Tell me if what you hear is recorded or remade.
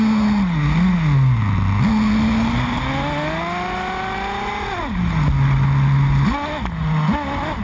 recorded